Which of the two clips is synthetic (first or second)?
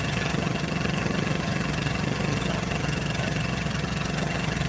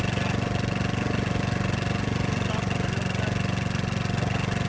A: first